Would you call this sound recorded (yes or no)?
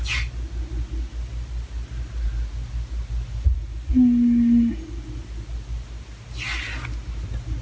yes